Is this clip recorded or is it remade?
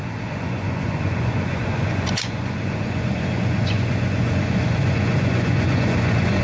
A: remade